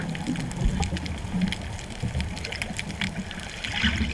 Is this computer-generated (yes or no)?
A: yes